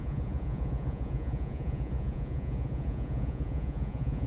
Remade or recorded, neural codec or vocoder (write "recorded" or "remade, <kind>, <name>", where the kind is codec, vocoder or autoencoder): remade, vocoder, Vocos